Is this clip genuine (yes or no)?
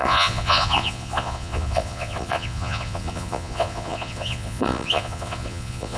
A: no